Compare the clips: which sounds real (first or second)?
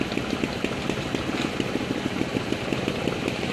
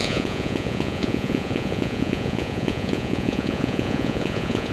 first